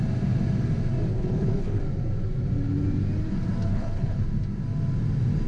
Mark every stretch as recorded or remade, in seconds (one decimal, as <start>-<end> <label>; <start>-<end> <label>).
0.0-1.1 recorded; 1.1-1.8 remade; 1.8-3.7 recorded; 3.7-4.2 remade; 4.2-5.5 recorded